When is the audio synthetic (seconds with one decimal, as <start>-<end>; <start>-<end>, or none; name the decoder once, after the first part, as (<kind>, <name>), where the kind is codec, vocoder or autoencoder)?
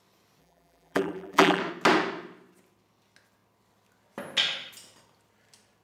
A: 0.4-1.6 (vocoder, BigVGAN v2)